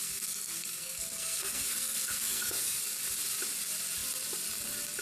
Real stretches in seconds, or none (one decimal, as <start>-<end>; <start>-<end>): 2.8-5.0